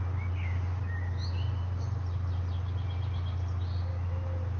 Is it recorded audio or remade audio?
recorded